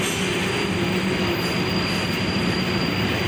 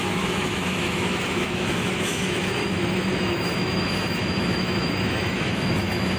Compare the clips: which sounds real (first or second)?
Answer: first